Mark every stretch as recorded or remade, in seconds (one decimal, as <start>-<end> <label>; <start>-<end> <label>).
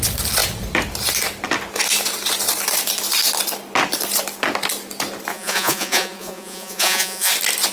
0.0-5.3 recorded; 5.3-7.3 remade; 7.3-7.7 recorded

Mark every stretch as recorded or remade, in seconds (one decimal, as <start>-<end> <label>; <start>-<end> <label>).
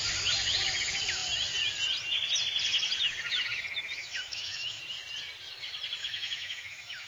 0.0-4.0 recorded; 4.0-4.8 remade; 4.8-6.0 recorded; 6.0-7.1 remade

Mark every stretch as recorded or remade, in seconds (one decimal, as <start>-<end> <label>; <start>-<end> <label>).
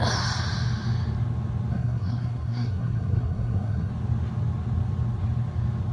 0.0-1.7 recorded; 1.7-3.9 remade; 3.9-5.9 recorded